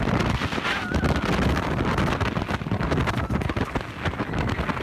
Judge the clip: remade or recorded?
recorded